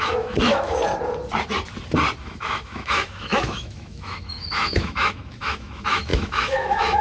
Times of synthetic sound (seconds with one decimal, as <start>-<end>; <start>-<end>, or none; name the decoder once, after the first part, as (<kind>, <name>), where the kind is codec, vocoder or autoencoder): 0.0-0.8 (autoencoder, DAC-VAE); 2.2-7.0